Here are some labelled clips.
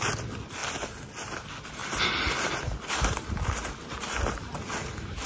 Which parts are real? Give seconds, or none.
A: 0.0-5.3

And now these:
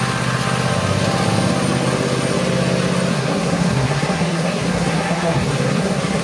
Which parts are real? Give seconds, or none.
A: 0.0-3.1